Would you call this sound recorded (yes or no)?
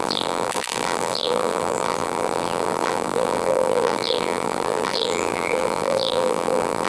no